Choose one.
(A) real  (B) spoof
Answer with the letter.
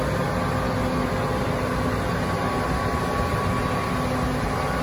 A